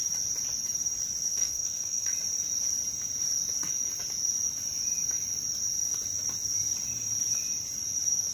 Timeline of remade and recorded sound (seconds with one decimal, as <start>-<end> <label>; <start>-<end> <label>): 0.0-1.3 recorded; 1.3-2.1 remade; 2.1-8.3 recorded